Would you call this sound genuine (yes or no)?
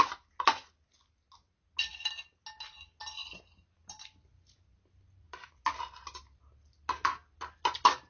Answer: yes